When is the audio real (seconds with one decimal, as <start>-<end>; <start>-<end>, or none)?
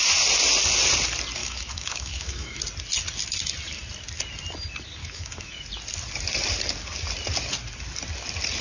0.0-1.4; 2.6-5.0; 5.6-8.6